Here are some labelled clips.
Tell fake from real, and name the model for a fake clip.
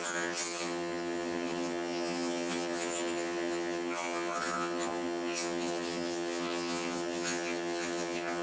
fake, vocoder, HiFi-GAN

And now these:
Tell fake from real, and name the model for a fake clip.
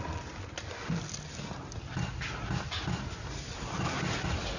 real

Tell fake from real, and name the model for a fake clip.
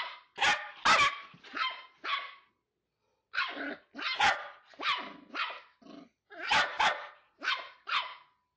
real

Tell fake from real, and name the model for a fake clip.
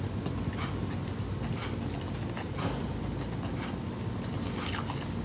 real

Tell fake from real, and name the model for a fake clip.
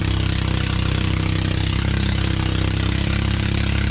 real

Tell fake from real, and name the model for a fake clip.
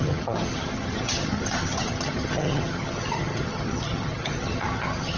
fake, vocoder, HiFi-GAN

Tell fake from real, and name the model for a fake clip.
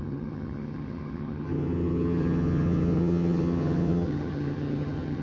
fake, vocoder, HiFi-GAN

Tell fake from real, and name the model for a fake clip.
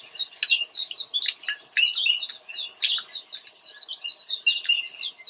real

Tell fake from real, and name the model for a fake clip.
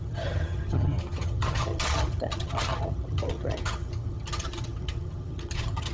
fake, vocoder, HiFi-GAN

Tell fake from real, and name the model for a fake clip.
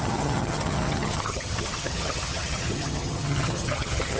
fake, vocoder, HiFi-GAN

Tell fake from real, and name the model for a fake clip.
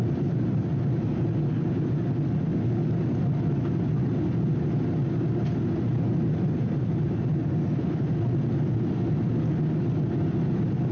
real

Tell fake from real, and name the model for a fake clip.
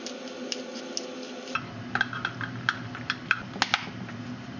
real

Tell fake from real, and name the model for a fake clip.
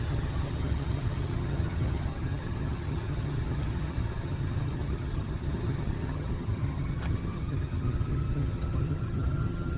fake, vocoder, HiFi-GAN